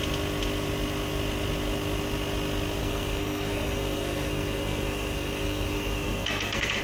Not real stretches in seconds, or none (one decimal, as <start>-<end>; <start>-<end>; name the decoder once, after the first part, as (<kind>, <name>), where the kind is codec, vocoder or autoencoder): 2.8-6.8 (codec, SNAC)